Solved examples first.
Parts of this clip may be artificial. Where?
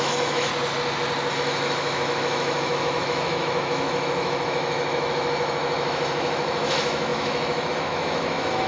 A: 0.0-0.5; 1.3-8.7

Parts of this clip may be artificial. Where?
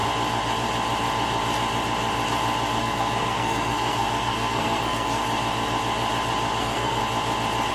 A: 2.8-5.2; 6.6-7.0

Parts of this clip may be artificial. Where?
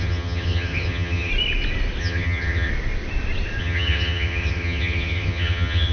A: 0.0-1.3; 2.0-2.7; 3.6-5.9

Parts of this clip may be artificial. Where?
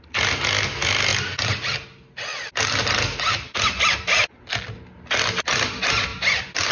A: none